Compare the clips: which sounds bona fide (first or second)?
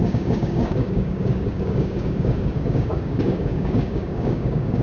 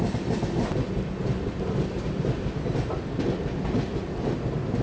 second